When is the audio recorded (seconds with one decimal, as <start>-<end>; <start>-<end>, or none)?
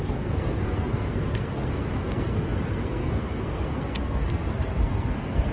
none